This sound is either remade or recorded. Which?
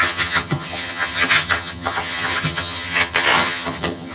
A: remade